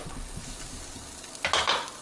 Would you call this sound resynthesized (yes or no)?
no